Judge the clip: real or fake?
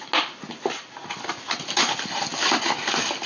real